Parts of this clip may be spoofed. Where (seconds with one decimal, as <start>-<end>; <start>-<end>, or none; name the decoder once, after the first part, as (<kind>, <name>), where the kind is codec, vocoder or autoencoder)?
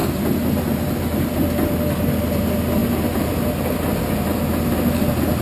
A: none